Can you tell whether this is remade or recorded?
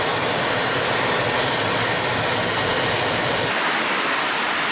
recorded